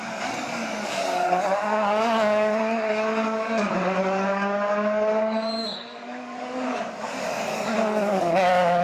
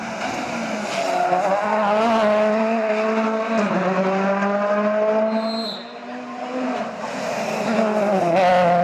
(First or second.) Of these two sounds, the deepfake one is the first